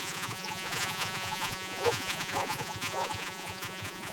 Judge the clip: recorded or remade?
remade